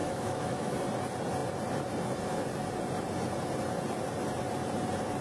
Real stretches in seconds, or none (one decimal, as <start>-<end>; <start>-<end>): 0.7-5.2